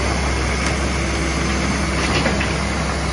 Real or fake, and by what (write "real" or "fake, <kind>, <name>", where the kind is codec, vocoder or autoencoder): real